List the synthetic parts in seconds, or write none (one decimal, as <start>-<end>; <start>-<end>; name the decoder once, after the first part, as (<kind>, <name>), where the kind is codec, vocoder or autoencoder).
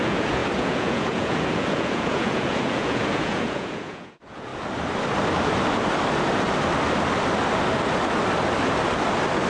0.0-4.5 (vocoder, Vocos)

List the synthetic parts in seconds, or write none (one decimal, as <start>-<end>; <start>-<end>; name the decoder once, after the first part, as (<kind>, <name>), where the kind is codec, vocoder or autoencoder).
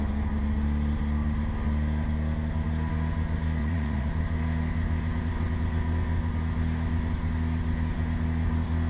3.6-4.1 (vocoder, Vocos)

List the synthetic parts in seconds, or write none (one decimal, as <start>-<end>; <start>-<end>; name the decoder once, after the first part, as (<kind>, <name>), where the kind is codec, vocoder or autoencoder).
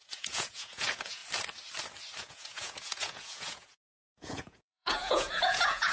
0.0-1.2 (vocoder, Vocos); 2.2-5.9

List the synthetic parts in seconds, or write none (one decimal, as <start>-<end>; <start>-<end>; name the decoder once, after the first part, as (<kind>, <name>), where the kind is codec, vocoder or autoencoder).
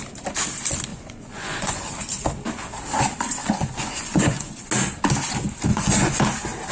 0.9-1.9 (vocoder, Vocos); 3.4-4.6; 5.7-6.2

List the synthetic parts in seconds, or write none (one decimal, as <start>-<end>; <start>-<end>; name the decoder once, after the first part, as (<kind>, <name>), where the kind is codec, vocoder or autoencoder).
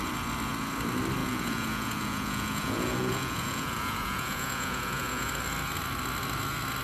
1.2-5.3 (vocoder, Vocos)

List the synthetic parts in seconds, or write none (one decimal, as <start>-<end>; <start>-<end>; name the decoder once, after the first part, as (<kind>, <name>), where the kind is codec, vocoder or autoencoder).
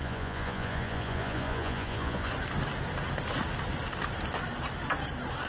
0.0-2.3 (vocoder, Vocos)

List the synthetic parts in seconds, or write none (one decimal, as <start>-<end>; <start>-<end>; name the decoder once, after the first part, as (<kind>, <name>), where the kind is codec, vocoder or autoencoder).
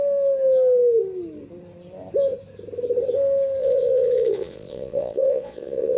3.6-6.0 (vocoder, Vocos)